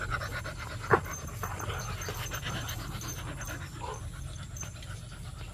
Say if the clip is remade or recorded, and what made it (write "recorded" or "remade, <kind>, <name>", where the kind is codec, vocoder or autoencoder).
recorded